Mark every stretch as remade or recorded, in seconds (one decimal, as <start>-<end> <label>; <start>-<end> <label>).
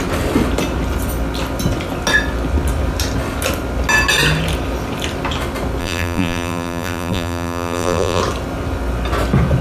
0.0-5.8 recorded; 5.8-8.2 remade; 8.2-9.6 recorded